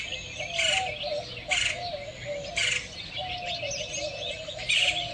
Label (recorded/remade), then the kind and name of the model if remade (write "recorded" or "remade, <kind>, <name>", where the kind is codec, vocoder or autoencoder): recorded